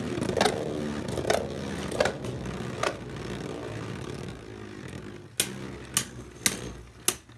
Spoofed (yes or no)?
no